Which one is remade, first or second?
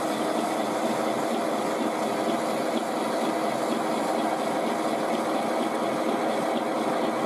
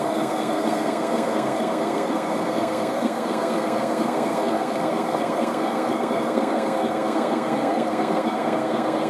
second